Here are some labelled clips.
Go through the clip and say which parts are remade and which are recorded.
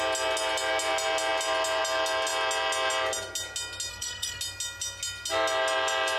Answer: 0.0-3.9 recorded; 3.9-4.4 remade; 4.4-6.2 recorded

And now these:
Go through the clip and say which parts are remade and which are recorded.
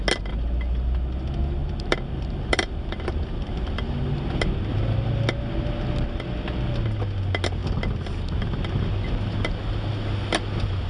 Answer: 0.0-1.6 recorded; 1.6-3.6 remade; 3.6-10.9 recorded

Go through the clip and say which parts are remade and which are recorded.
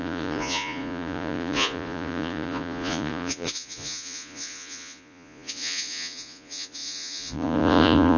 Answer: 0.0-8.2 remade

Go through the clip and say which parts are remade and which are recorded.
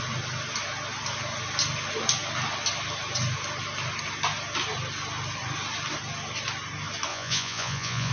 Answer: 0.0-7.1 recorded; 7.1-8.1 remade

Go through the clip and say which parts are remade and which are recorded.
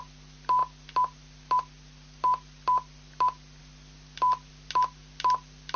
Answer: 0.0-5.8 recorded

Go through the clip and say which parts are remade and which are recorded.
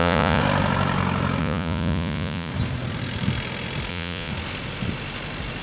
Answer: 0.0-0.4 remade; 0.4-1.4 recorded; 1.4-2.5 remade; 2.5-3.9 recorded; 3.9-4.3 remade; 4.3-5.6 recorded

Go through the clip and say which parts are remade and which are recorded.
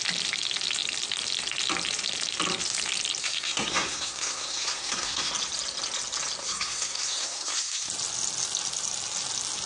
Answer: 0.0-3.2 recorded; 3.2-5.3 remade; 5.3-6.4 recorded; 6.4-7.9 remade; 7.9-9.7 recorded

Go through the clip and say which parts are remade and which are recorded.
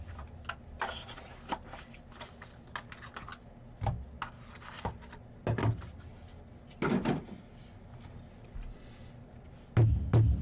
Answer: 0.0-10.4 recorded